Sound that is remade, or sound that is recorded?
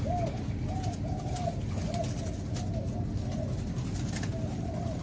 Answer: recorded